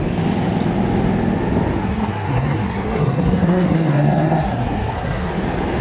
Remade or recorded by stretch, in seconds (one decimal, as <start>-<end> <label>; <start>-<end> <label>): 0.0-1.8 recorded; 1.8-5.3 remade; 5.3-5.8 recorded

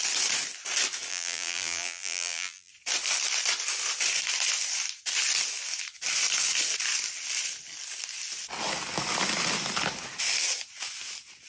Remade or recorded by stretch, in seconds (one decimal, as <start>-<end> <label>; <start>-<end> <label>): 0.0-1.1 recorded; 1.1-2.7 remade; 2.7-11.5 recorded

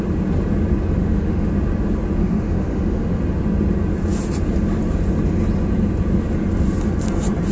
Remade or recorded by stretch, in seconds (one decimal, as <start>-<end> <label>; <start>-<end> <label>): 0.0-1.0 recorded; 1.0-1.5 remade; 1.5-2.2 recorded; 2.2-3.2 remade; 3.2-7.5 recorded

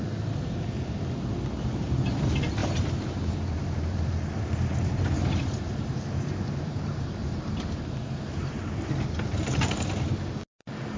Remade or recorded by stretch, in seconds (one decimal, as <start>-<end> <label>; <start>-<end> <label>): 0.0-2.6 recorded; 2.6-4.1 remade; 4.1-4.7 recorded; 4.7-7.8 remade; 7.8-11.0 recorded

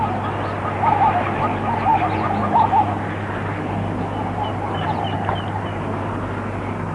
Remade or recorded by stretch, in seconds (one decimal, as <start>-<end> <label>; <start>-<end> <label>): 0.0-6.9 recorded

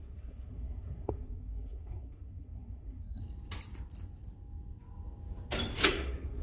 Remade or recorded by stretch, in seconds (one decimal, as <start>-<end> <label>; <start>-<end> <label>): 0.0-3.2 remade; 3.2-5.9 recorded; 5.9-6.4 remade

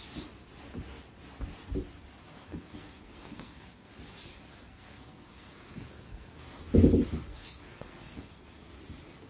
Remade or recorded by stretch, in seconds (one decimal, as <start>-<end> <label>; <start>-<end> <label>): 0.0-2.2 recorded; 2.2-3.9 remade; 3.9-4.3 recorded; 4.3-6.6 remade; 6.6-7.3 recorded; 7.3-8.7 remade; 8.7-9.3 recorded